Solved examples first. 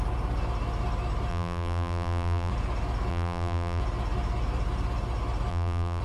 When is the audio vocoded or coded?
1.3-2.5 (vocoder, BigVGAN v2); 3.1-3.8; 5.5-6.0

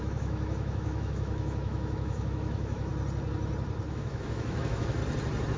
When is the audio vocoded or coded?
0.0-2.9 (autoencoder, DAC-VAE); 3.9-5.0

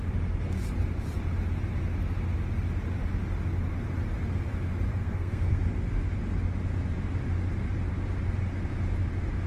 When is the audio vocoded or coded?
4.9-5.6 (codec, SNAC)

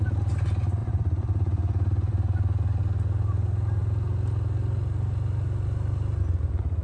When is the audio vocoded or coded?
0.8-2.8 (vocoder, BigVGAN v2)